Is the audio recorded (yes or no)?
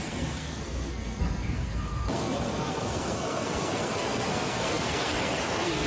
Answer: no